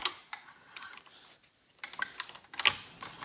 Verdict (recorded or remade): recorded